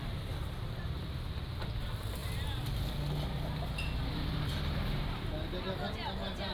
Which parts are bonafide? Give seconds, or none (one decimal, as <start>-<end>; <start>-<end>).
0.0-6.5